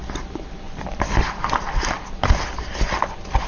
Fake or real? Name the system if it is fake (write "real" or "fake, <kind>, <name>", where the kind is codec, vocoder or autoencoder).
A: real